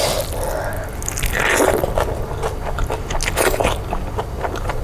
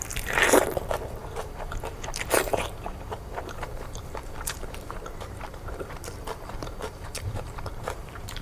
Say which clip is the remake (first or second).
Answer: second